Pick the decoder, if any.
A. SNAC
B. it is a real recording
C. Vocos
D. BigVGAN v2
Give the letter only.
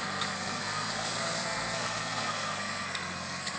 A